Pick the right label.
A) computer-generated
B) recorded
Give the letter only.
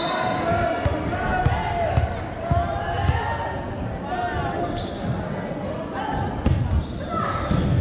B